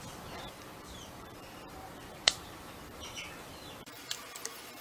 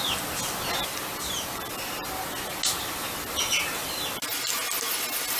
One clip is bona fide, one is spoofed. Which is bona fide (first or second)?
second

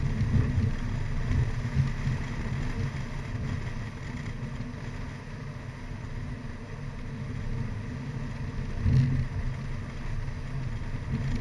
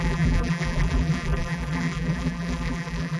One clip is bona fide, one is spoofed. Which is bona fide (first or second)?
first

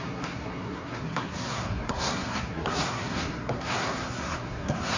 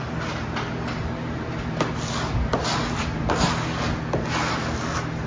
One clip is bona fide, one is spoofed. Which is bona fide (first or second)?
second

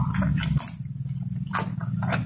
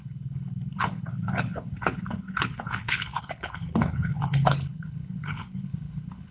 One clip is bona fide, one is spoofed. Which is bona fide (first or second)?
first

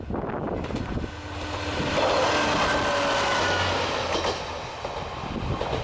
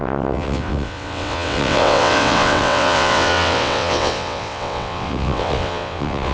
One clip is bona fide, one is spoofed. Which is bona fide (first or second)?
first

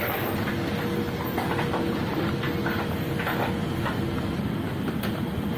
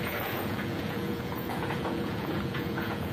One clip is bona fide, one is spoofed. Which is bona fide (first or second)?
first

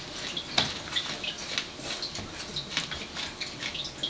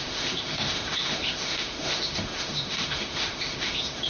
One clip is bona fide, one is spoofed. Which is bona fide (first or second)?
first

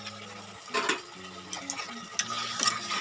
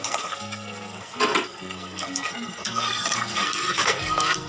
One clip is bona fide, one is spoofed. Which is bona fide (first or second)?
first